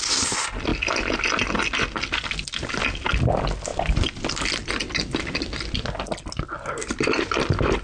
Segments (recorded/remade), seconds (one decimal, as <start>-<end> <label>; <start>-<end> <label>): 0.0-7.8 recorded